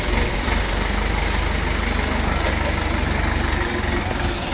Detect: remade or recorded recorded